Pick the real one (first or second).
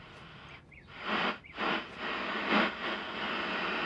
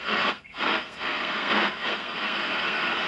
first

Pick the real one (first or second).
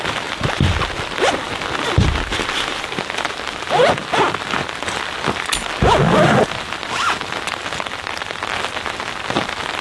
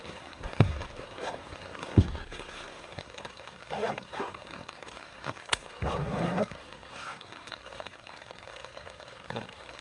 first